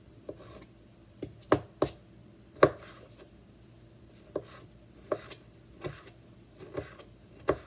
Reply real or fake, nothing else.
real